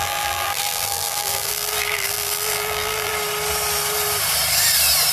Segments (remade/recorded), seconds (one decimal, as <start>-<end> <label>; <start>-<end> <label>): 0.0-3.1 remade; 3.1-5.1 recorded